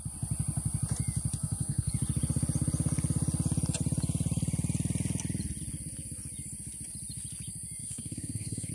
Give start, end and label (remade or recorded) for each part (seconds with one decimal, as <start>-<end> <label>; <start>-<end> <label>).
0.0-1.4 recorded; 1.4-1.9 remade; 1.9-7.8 recorded; 7.8-8.7 remade